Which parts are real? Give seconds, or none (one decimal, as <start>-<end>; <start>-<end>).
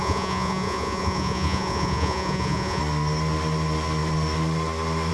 2.8-5.1